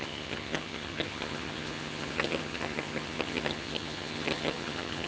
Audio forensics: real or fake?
fake